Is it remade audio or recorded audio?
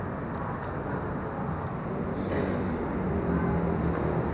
recorded